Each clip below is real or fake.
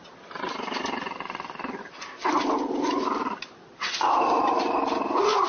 real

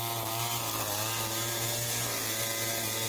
real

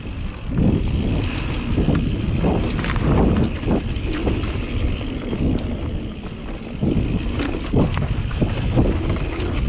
real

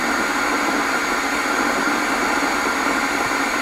real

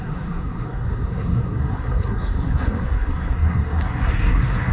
fake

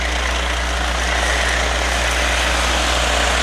real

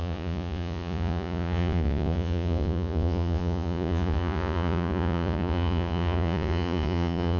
fake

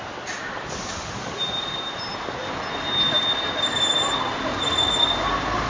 real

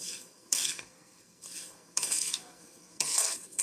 fake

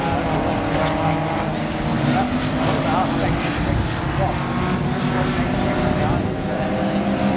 real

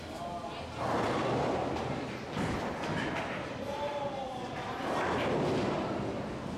real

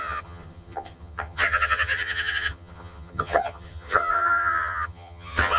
fake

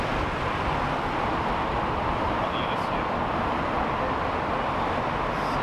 real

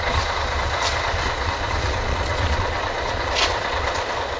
fake